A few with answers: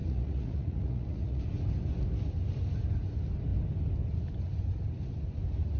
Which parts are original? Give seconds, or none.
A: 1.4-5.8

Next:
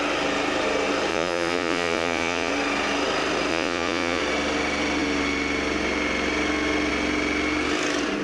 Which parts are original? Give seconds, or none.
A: 0.0-1.1; 2.5-3.5; 4.2-8.2

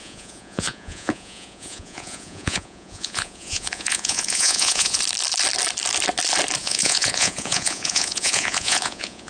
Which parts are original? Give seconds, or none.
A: 5.0-6.6

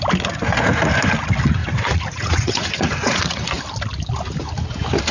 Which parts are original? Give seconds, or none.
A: 0.0-1.6; 3.6-5.1

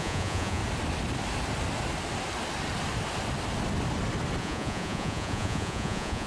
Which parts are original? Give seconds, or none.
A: 0.6-4.4

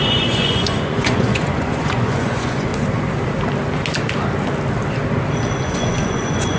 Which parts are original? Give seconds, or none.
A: 2.7-5.6

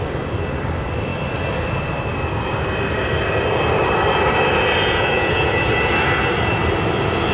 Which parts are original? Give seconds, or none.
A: 0.0-4.8; 5.5-7.3

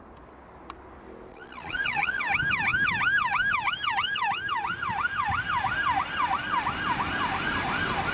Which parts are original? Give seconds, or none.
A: 0.0-1.3; 2.2-8.1